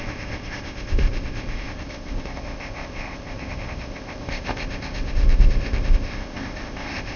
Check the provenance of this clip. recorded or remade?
remade